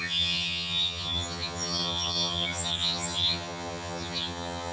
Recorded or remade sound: remade